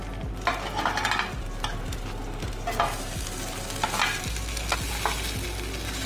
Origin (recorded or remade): recorded